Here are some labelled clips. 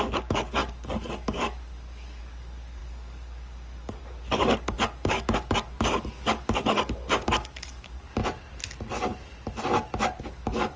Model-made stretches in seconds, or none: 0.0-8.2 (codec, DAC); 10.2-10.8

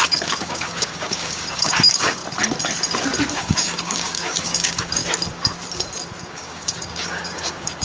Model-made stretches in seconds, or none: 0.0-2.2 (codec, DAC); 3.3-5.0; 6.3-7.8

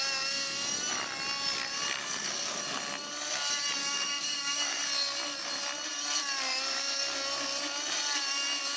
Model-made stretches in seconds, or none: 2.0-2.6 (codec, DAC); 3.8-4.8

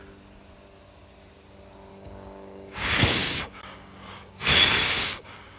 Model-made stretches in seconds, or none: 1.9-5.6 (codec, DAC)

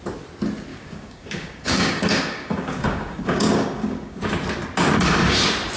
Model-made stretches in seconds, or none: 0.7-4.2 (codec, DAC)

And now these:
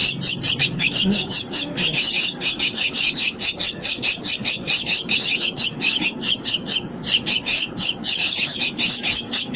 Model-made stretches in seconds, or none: 0.6-9.6 (codec, DAC)